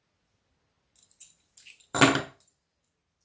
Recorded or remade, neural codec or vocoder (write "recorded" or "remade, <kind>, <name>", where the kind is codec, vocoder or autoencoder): recorded